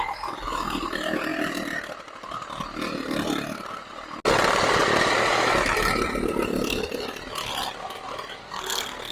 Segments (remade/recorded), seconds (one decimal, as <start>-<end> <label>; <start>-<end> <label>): 0.0-8.4 recorded; 8.4-9.1 remade